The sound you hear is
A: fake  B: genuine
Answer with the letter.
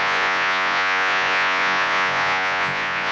A